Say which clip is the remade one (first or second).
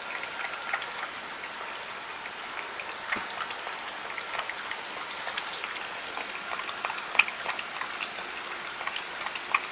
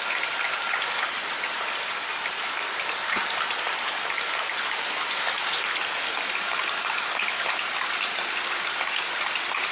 second